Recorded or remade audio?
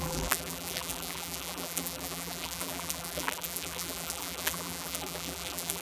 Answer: remade